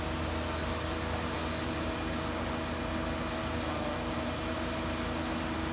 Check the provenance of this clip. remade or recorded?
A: recorded